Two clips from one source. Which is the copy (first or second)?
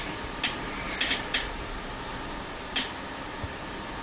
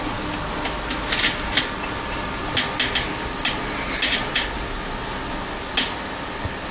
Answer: first